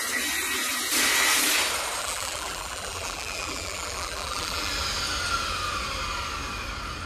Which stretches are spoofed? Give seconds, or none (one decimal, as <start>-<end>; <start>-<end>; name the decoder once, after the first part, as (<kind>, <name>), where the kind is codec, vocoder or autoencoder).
2.0-4.7 (vocoder, BigVGAN v2)